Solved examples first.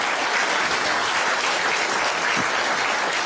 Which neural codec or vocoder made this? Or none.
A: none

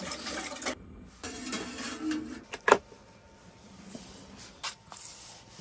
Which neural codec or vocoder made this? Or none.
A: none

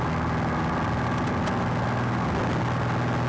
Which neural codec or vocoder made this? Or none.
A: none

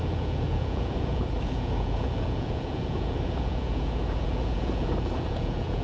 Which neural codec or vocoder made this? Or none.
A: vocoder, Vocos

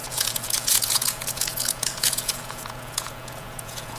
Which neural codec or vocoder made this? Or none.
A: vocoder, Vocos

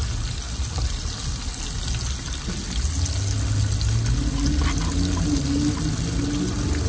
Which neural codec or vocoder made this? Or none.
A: none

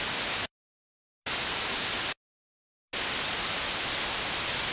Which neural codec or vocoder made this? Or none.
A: none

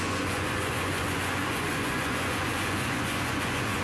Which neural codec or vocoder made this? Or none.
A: vocoder, Vocos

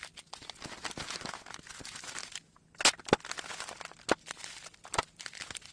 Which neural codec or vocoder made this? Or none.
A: none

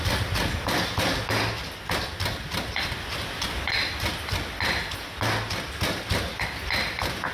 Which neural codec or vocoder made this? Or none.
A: none